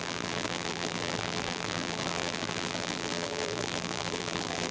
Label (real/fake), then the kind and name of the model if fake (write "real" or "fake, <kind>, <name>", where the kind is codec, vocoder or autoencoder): fake, vocoder, BigVGAN v2